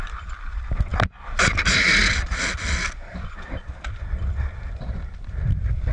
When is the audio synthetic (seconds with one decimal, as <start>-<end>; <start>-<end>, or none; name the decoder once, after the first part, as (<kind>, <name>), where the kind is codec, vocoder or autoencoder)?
none